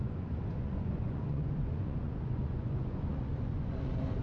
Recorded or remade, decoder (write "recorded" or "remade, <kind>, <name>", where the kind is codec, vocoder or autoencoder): remade, vocoder, Vocos